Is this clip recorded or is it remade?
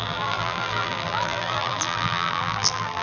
remade